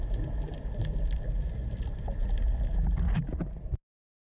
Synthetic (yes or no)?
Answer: no